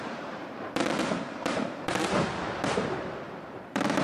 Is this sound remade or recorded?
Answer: remade